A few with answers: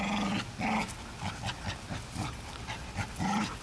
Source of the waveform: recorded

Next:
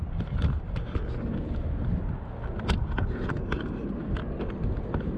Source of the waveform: recorded